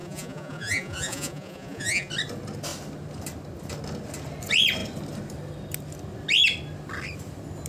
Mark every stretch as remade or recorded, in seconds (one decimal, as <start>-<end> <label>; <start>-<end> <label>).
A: 0.0-2.1 remade; 2.1-7.7 recorded